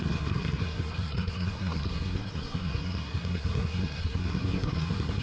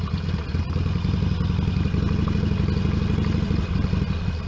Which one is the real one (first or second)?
second